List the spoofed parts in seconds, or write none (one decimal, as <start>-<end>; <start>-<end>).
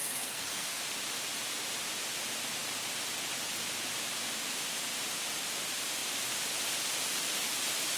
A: 0.0-0.8